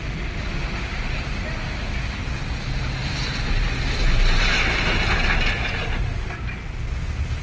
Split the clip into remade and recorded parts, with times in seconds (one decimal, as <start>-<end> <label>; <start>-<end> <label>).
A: 0.0-3.0 recorded; 3.0-4.6 remade; 4.6-7.4 recorded